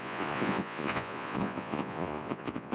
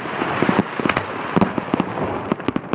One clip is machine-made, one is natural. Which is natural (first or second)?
second